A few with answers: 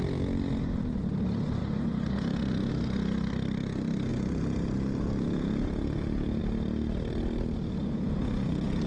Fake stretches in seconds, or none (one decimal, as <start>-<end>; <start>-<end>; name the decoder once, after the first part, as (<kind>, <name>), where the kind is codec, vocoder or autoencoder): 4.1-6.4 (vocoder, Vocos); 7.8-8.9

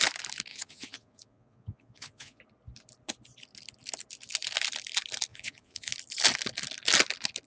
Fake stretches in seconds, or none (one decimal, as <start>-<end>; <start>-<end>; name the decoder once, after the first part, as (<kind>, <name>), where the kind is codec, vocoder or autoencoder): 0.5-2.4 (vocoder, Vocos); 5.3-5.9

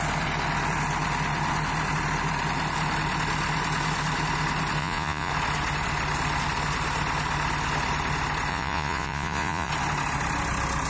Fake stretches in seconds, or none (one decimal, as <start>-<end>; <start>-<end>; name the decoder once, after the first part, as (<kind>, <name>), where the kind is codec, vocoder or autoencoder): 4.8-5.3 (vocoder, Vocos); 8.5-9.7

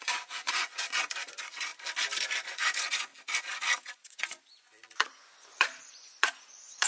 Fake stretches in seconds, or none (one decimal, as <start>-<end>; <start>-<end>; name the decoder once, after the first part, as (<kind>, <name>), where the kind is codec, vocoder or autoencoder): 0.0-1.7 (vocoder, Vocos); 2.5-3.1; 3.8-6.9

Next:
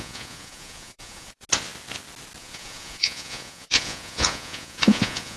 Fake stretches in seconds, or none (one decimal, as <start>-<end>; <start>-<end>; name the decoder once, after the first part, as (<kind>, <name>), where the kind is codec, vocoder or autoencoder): 0.0-1.4 (vocoder, Vocos); 2.4-5.4

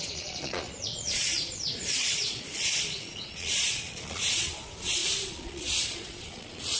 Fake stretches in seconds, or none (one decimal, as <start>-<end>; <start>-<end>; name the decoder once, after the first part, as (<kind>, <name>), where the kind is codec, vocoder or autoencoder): 0.0-6.8 (vocoder, Vocos)